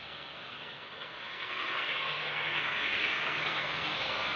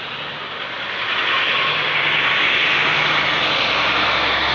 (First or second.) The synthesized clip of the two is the first